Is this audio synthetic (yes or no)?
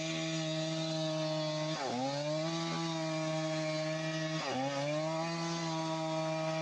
no